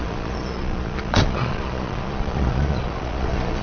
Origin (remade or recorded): remade